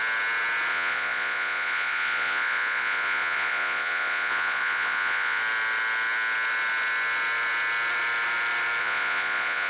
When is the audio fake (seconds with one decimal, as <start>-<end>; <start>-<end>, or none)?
0.7-5.4; 8.8-9.7